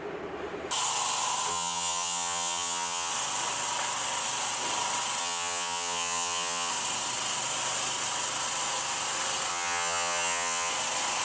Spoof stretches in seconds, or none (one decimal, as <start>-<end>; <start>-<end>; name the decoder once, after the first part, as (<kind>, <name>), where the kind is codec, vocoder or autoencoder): 1.5-3.1 (vocoder, HiFi-GAN); 5.2-6.7; 9.5-10.7